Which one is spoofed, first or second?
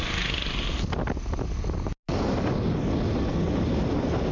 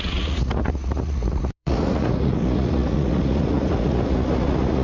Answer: second